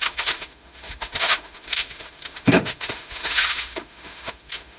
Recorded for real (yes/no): no